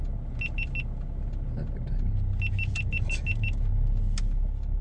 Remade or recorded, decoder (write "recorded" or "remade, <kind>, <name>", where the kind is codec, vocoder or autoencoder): recorded